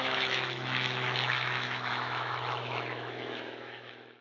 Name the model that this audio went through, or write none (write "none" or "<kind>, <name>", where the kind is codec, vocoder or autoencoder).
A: autoencoder, DAC-VAE